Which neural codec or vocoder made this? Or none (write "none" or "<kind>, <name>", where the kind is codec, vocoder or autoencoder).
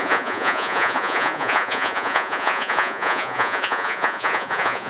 vocoder, Vocos